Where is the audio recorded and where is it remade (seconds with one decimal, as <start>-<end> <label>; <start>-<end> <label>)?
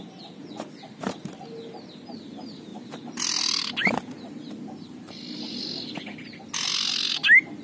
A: 0.0-7.6 recorded